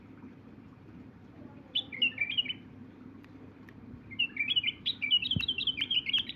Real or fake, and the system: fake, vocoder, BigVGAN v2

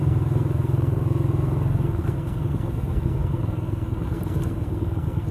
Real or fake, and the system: fake, codec, SNAC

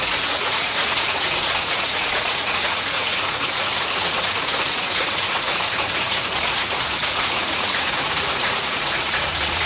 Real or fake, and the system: fake, vocoder, Vocos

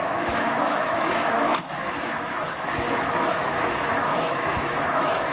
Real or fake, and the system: fake, autoencoder, DAC-VAE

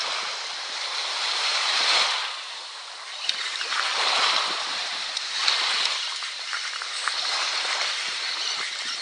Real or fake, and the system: fake, vocoder, BigVGAN v2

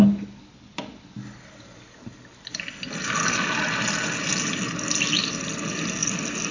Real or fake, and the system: real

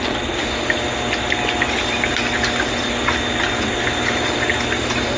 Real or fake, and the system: real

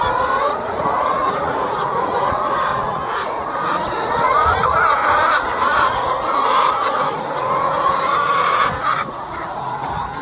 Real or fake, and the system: fake, vocoder, Vocos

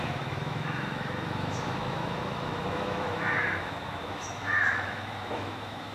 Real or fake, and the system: fake, autoencoder, DAC-VAE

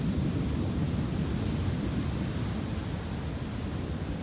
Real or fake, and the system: real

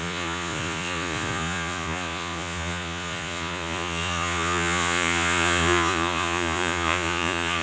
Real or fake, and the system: fake, vocoder, Vocos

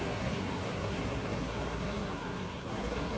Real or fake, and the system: fake, codec, SNAC